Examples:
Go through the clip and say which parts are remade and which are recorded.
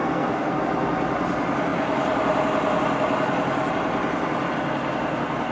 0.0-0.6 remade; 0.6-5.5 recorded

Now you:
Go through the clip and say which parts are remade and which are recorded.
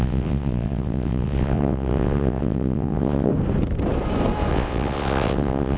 0.0-3.3 remade; 3.3-4.5 recorded; 4.5-5.8 remade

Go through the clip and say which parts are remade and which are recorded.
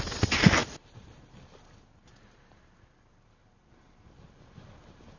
0.0-5.2 recorded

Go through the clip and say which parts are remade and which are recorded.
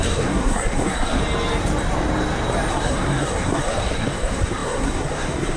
0.0-1.2 remade; 1.2-2.7 recorded; 2.7-5.6 remade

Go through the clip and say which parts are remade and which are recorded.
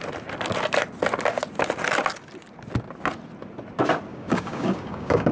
0.0-4.1 recorded; 4.1-5.3 remade